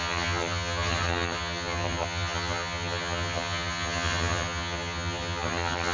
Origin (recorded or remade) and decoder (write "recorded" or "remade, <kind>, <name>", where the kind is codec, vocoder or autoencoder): remade, vocoder, HiFi-GAN